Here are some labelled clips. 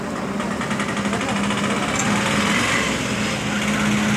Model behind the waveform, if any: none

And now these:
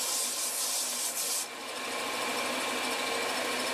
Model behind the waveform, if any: none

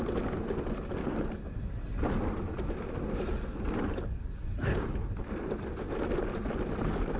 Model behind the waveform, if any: none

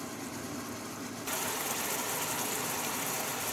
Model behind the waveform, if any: none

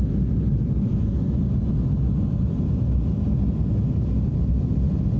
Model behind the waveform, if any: none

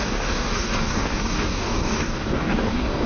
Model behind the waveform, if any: codec, DAC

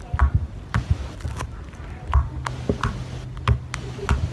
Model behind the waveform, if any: none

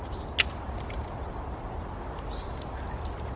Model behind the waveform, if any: none